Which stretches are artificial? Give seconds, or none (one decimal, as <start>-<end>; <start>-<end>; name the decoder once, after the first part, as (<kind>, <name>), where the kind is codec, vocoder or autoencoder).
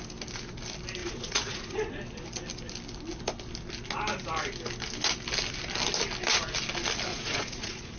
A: 1.0-1.9 (vocoder, Vocos); 7.1-8.0